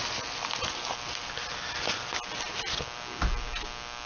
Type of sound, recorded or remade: recorded